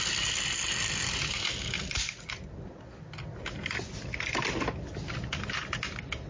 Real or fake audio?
real